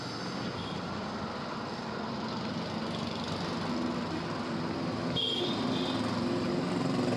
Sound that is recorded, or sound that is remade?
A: recorded